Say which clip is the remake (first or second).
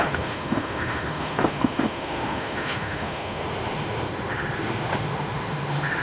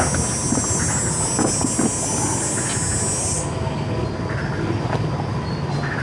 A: first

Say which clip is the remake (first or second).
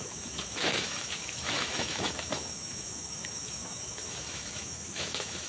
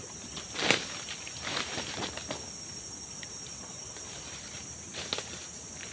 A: first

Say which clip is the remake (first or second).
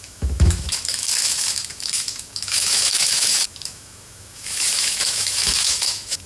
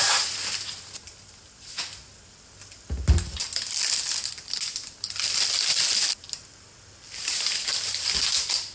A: first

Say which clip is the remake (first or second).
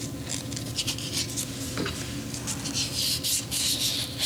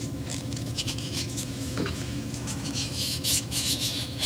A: second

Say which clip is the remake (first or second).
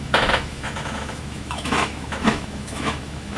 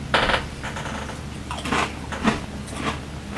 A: first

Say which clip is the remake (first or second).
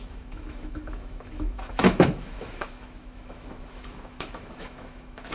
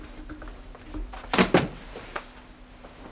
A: first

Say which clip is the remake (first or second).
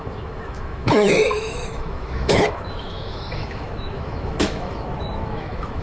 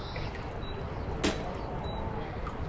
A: first